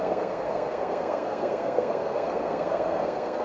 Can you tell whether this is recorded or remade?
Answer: remade